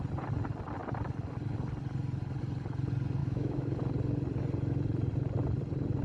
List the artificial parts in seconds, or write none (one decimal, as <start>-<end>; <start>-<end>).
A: 3.2-3.8